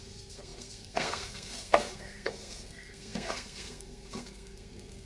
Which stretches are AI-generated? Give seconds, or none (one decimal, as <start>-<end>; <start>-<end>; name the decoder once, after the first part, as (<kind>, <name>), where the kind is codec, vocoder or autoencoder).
0.0-5.1 (codec, SNAC)